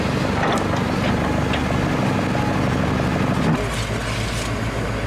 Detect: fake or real real